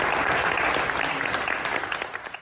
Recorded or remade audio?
recorded